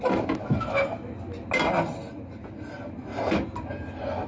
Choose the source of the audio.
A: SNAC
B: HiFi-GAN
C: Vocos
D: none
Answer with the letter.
D